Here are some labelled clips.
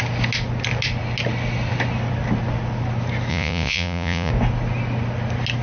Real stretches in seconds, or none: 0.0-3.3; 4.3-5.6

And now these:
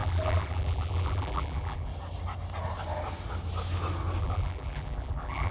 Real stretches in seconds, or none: 1.9-4.2

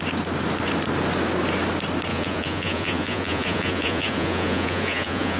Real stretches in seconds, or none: 0.0-2.1

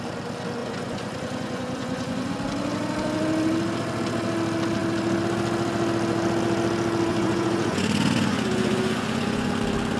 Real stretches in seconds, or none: 0.0-0.6; 2.3-7.1; 9.5-10.0

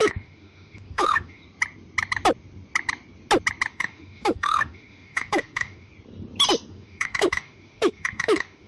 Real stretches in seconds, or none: 1.4-3.7; 5.9-6.7

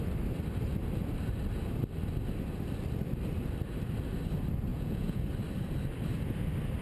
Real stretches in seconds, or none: 0.0-4.7; 5.2-6.8

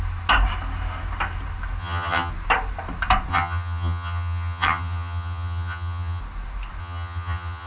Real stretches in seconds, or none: 0.0-1.8; 2.3-3.3; 6.2-6.8

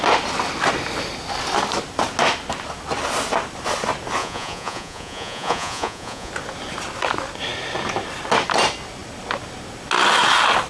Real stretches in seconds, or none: 0.0-4.2; 6.3-10.7